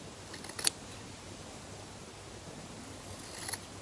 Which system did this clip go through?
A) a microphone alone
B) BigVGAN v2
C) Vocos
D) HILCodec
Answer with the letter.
A